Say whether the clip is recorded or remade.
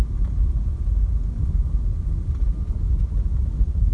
recorded